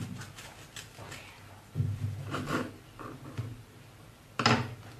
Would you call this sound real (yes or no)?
yes